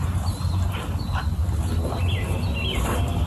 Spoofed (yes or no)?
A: no